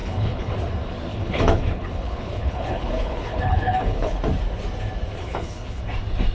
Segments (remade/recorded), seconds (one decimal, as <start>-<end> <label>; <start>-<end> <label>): 0.0-0.5 remade; 0.5-1.1 recorded; 1.1-4.2 remade; 4.2-5.2 recorded; 5.2-5.8 remade; 5.8-6.3 recorded

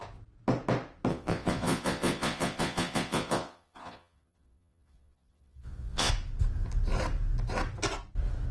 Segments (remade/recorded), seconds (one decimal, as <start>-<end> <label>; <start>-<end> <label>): 0.0-1.1 recorded; 1.1-6.1 remade; 6.1-8.5 recorded

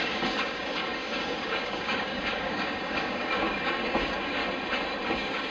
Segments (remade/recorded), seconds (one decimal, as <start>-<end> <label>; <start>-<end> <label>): 0.0-4.4 remade; 4.4-5.1 recorded; 5.1-5.5 remade